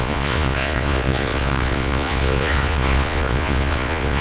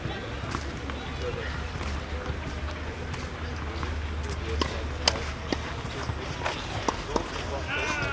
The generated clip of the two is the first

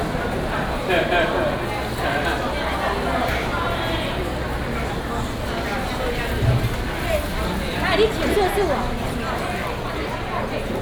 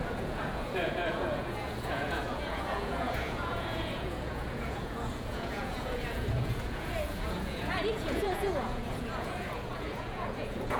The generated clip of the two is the second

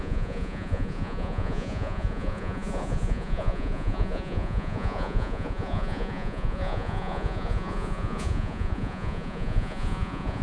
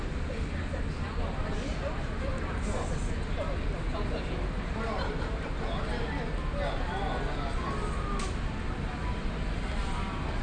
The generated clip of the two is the first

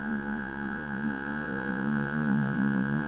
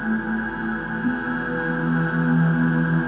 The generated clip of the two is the first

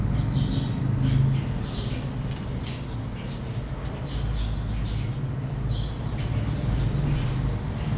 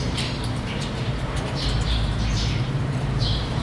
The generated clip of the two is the second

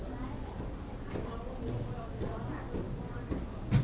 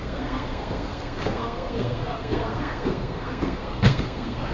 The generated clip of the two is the second